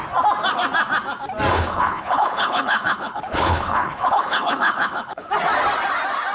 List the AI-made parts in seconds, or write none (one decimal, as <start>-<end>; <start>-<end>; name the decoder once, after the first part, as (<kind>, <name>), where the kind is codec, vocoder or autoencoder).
1.5-5.3 (codec, HILCodec)